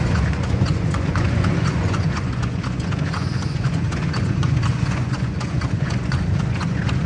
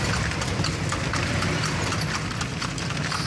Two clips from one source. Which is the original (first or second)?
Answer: second